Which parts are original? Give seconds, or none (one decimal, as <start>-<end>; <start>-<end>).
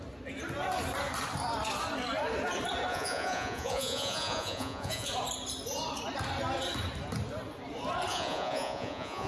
0.0-2.9; 5.1-8.1